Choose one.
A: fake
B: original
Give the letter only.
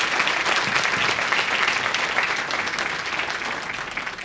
B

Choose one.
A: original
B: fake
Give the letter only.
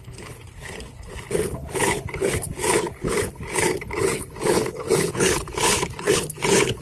B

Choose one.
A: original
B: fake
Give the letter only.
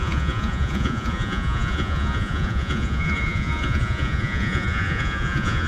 B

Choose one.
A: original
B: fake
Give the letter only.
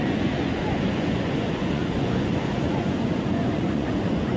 B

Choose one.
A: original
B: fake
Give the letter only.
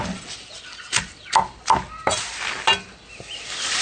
A